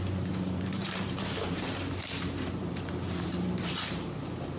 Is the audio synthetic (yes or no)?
yes